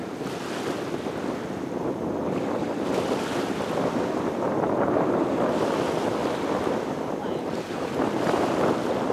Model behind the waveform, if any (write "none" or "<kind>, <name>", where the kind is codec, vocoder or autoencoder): none